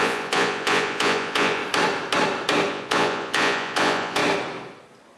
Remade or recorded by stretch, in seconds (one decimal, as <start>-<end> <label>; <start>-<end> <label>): 0.0-1.6 remade; 1.6-2.7 recorded; 2.7-4.2 remade; 4.2-5.2 recorded